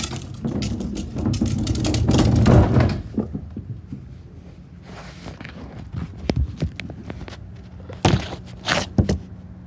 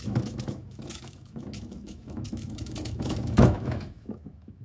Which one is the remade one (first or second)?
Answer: second